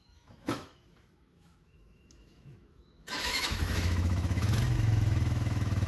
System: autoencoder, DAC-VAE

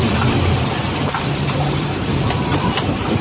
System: vocoder, BigVGAN v2